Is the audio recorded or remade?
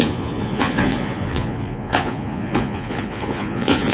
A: remade